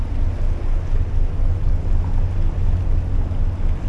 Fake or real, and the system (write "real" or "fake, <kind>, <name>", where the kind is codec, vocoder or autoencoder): real